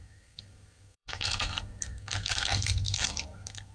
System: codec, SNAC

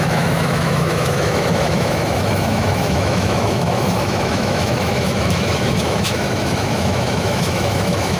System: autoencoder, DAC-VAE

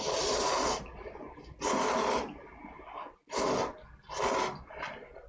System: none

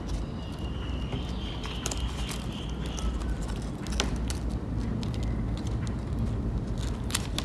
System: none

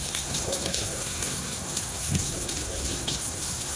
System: codec, SNAC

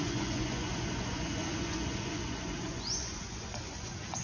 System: vocoder, Vocos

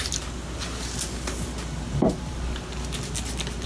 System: none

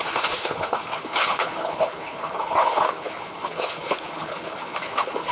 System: codec, HILCodec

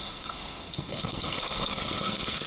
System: codec, SNAC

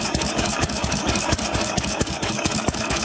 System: codec, DAC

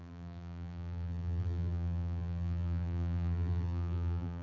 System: vocoder, BigVGAN v2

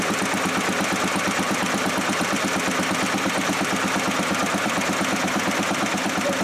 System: vocoder, BigVGAN v2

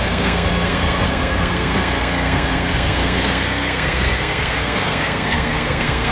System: codec, SNAC